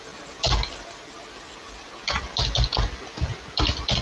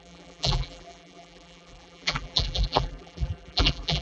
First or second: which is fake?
second